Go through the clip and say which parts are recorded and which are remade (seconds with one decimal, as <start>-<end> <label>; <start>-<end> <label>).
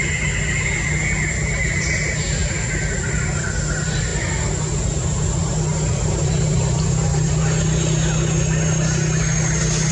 0.0-5.4 recorded; 5.4-7.3 remade; 7.3-9.9 recorded